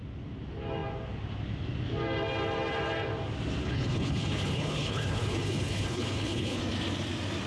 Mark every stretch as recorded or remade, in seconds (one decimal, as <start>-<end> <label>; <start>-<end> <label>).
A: 0.0-3.6 recorded; 3.6-6.6 remade; 6.6-7.5 recorded